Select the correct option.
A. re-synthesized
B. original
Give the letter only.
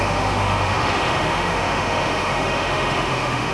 A